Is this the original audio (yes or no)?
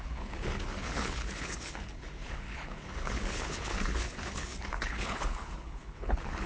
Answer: no